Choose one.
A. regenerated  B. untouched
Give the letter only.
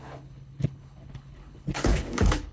A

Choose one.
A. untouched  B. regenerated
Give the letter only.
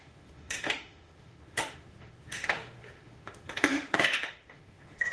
B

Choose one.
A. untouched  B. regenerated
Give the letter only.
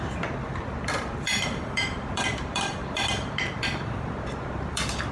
B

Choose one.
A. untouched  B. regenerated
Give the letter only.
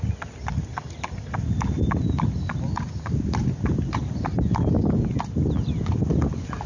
A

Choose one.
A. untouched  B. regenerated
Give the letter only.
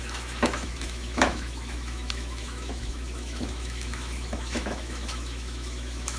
B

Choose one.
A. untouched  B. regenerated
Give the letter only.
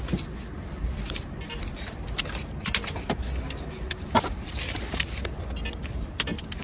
A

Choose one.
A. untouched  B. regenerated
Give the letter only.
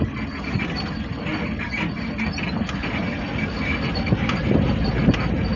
A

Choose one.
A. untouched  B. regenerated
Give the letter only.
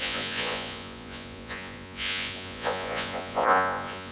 B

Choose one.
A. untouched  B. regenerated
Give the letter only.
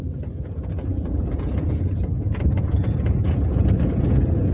B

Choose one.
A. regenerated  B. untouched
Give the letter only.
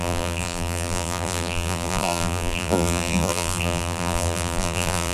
A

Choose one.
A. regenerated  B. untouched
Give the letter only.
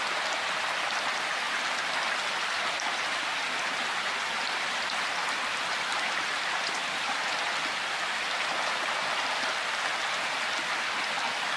B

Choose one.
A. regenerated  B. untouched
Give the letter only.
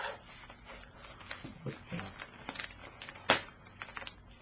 B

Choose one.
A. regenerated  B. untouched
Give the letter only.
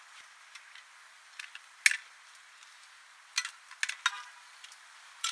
B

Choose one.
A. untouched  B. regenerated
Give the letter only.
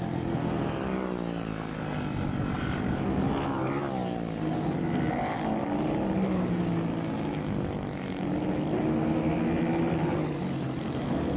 A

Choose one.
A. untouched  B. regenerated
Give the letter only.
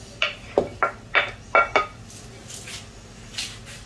A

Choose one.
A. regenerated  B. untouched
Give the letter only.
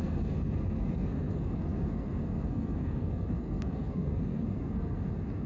A